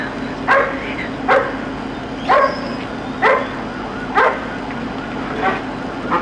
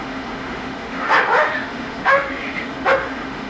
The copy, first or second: second